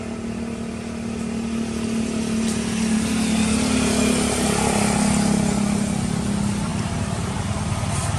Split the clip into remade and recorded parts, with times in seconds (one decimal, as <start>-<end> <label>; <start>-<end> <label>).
0.0-6.7 recorded; 6.7-8.2 remade